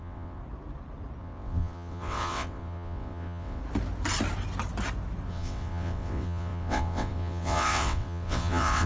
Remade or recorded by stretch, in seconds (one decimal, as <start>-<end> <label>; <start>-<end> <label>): 0.0-0.4 remade; 0.4-1.2 recorded; 1.2-3.6 remade; 3.6-5.3 recorded; 5.3-8.9 remade